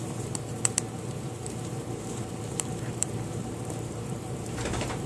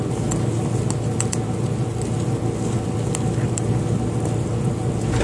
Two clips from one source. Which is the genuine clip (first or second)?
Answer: second